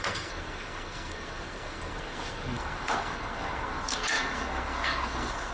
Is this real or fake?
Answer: fake